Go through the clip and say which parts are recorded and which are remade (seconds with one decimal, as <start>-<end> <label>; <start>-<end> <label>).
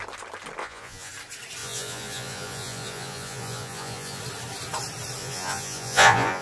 0.0-0.6 recorded; 0.6-1.1 remade; 1.1-1.6 recorded; 1.6-4.2 remade; 4.2-5.2 recorded; 5.2-6.4 remade